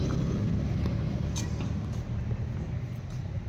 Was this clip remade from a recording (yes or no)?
no